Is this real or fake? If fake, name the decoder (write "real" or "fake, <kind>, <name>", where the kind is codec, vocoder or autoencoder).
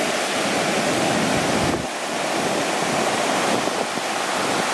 real